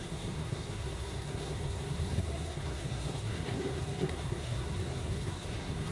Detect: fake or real fake